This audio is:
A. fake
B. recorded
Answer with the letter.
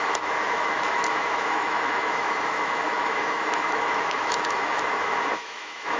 A